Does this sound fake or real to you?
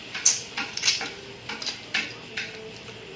fake